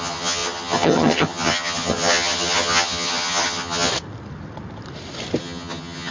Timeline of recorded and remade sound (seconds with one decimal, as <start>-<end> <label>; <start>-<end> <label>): 0.0-3.9 remade; 3.9-5.4 recorded; 5.4-6.1 remade